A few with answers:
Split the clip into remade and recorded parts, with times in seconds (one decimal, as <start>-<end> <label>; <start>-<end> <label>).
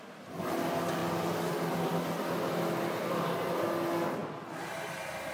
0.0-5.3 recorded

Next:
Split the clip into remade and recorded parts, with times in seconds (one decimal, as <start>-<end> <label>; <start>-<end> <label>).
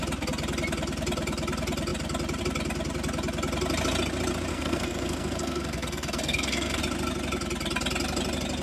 0.0-4.5 recorded; 4.5-6.8 remade; 6.8-8.6 recorded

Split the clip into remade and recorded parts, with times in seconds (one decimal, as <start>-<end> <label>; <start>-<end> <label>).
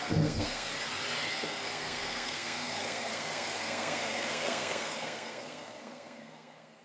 0.0-0.7 remade; 0.7-1.3 recorded; 1.3-6.8 remade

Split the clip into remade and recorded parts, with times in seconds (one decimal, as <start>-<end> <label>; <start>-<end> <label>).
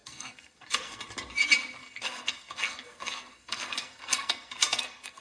0.0-1.0 remade; 1.0-1.8 recorded; 1.8-5.2 remade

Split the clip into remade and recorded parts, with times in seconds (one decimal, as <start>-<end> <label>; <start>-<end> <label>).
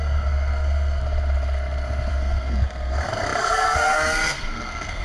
0.0-1.0 remade; 1.0-2.1 recorded; 2.1-5.0 remade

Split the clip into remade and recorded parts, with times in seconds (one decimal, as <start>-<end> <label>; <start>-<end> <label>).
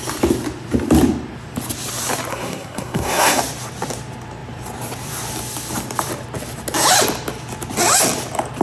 0.0-2.3 recorded; 2.3-3.4 remade; 3.4-8.6 recorded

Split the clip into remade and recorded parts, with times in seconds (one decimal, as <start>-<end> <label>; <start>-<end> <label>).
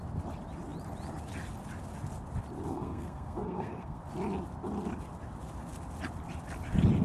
0.0-2.7 recorded; 2.7-4.0 remade; 4.0-7.0 recorded